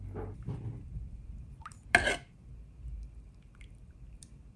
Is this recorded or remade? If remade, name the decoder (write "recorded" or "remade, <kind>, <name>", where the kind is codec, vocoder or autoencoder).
recorded